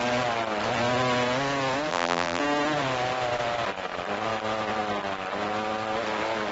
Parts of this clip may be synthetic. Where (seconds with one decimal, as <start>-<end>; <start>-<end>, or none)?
1.9-2.4